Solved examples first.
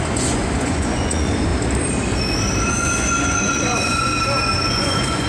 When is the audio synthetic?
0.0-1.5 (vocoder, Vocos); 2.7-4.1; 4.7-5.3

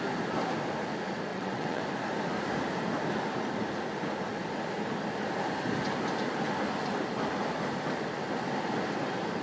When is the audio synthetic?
1.3-1.8 (vocoder, WaveNeXt)